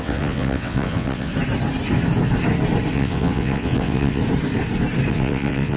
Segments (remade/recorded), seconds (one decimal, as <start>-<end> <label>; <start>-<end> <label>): 0.0-1.3 remade; 1.3-2.9 recorded; 2.9-4.2 remade; 4.2-5.1 recorded; 5.1-5.8 remade